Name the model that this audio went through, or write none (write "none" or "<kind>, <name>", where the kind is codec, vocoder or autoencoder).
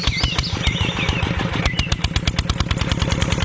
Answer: none